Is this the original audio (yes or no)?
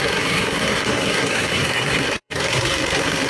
no